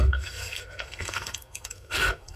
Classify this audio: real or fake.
fake